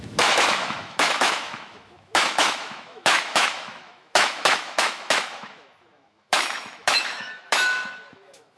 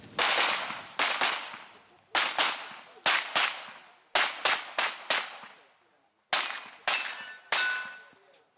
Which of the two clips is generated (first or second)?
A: first